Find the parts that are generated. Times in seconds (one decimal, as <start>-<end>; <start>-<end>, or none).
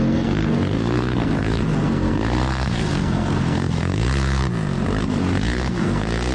0.0-4.4; 5.0-6.3